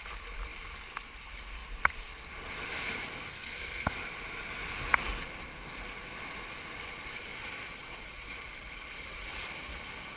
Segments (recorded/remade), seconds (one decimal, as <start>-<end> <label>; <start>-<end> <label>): 0.0-3.3 recorded; 3.3-3.9 remade; 3.9-10.2 recorded